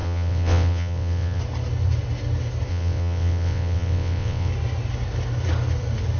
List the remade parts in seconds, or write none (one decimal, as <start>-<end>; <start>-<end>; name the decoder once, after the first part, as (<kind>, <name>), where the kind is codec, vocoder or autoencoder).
0.0-1.4 (vocoder, WaveNeXt); 2.7-4.5